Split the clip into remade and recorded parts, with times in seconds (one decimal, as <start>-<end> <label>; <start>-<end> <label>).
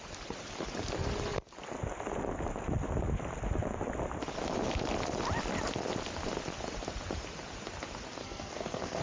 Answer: 0.0-8.2 recorded; 8.2-9.0 remade